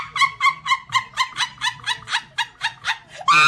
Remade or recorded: recorded